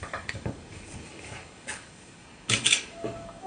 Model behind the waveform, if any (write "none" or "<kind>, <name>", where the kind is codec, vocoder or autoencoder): codec, DAC